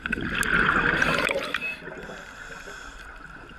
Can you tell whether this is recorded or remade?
recorded